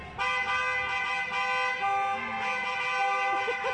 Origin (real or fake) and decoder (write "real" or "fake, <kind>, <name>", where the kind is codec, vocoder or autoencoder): real